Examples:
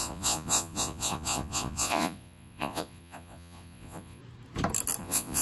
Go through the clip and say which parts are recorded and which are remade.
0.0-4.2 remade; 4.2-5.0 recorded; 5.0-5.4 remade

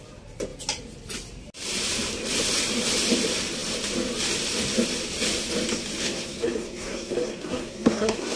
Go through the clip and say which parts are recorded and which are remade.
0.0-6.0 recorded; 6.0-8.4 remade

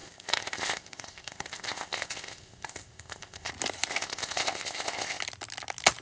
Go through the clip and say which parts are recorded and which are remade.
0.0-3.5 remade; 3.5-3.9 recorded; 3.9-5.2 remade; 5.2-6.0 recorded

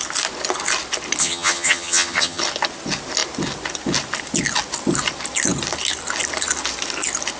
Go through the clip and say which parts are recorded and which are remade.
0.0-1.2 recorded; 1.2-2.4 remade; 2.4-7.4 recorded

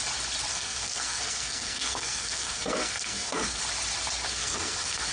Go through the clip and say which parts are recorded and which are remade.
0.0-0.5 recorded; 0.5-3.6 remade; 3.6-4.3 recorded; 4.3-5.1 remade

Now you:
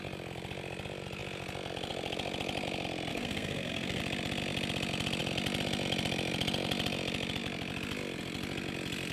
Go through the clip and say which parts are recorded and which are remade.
0.0-3.1 recorded; 3.1-4.0 remade; 4.0-9.1 recorded